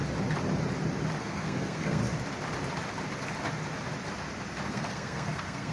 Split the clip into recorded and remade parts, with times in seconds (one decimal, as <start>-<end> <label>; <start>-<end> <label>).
0.0-1.2 recorded; 1.2-2.0 remade; 2.0-4.7 recorded; 4.7-5.7 remade